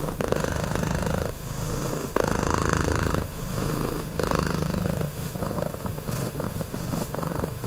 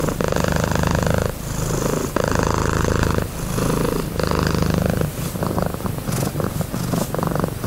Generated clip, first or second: first